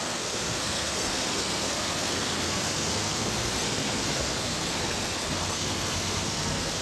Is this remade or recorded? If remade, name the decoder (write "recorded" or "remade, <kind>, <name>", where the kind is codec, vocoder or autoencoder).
remade, codec, SNAC